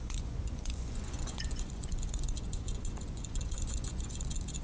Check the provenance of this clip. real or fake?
fake